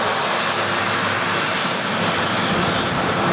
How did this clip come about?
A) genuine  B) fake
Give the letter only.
A